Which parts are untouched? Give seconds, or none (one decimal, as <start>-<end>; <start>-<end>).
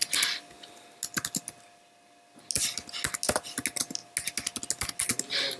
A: 0.0-5.6